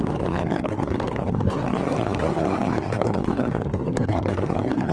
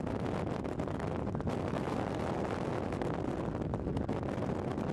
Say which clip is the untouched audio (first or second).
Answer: second